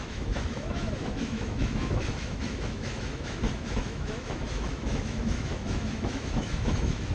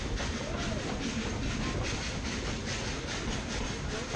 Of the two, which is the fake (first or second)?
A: first